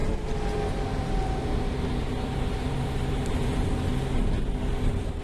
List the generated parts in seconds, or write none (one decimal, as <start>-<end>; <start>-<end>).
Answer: 1.4-4.5